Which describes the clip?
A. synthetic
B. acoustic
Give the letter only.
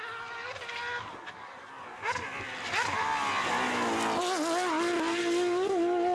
B